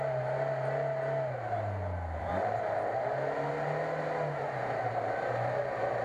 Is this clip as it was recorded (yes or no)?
yes